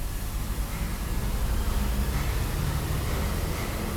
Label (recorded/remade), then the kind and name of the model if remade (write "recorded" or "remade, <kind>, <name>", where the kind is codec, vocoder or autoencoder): recorded